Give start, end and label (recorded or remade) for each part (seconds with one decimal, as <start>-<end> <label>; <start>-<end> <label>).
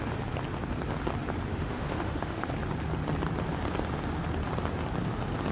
0.0-1.5 recorded; 1.5-2.5 remade; 2.5-5.5 recorded